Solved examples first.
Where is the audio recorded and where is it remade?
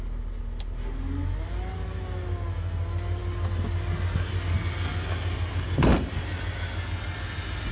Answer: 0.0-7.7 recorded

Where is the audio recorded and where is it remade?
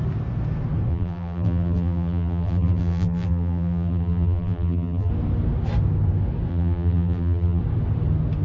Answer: 0.0-0.9 recorded; 0.9-5.1 remade; 5.1-6.5 recorded; 6.5-7.6 remade; 7.6-8.4 recorded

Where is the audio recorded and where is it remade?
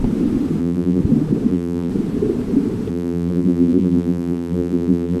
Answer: 0.0-0.6 recorded; 0.6-1.0 remade; 1.0-1.5 recorded; 1.5-1.9 remade; 1.9-2.9 recorded; 2.9-5.2 remade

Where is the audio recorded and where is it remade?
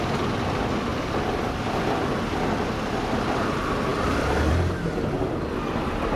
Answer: 0.0-6.2 recorded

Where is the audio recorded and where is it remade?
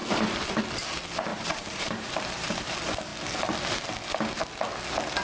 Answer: 0.0-0.6 remade; 0.6-1.3 recorded; 1.3-2.7 remade; 2.7-5.2 recorded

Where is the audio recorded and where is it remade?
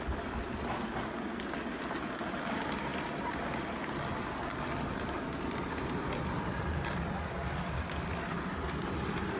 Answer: 0.0-9.4 recorded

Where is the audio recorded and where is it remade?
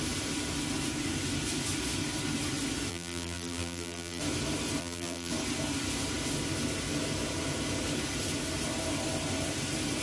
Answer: 0.0-2.9 recorded; 2.9-4.2 remade; 4.2-4.8 recorded; 4.8-5.3 remade; 5.3-10.0 recorded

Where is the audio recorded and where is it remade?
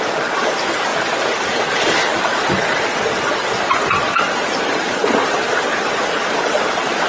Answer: 0.0-0.9 remade; 0.9-1.5 recorded; 1.5-2.1 remade; 2.1-4.2 recorded; 4.2-5.0 remade; 5.0-5.9 recorded; 5.9-7.1 remade